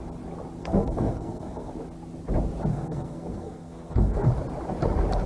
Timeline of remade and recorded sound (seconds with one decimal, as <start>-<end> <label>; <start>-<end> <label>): 0.0-0.6 recorded; 0.6-1.7 remade; 1.7-2.7 recorded; 2.7-4.3 remade; 4.3-5.3 recorded